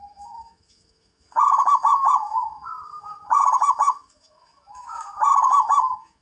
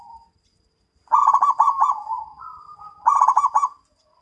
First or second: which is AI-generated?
first